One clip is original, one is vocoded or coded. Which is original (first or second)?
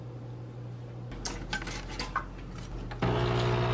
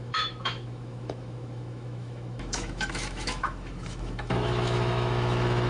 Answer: first